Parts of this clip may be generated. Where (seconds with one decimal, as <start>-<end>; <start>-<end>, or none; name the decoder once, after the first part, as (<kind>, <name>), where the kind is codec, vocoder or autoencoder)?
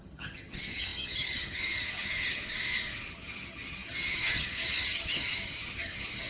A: 0.0-2.4 (vocoder, HiFi-GAN); 3.1-6.3